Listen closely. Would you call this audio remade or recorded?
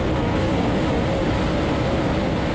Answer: recorded